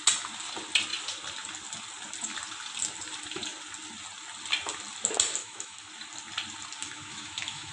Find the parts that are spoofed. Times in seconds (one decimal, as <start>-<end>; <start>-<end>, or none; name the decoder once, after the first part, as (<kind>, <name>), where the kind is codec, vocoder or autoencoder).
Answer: 5.4-5.9 (autoencoder, DAC-VAE); 6.8-7.7

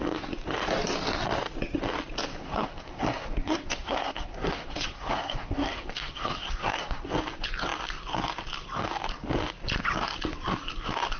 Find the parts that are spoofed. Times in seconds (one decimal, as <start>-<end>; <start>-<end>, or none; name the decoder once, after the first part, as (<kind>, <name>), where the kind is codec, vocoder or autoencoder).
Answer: 2.3-7.1 (codec, SNAC)